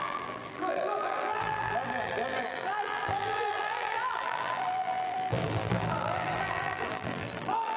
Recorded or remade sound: remade